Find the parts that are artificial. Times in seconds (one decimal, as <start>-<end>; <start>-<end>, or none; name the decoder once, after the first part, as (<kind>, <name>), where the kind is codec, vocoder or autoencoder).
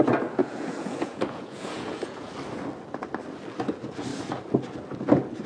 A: 0.4-2.3 (vocoder, Vocos)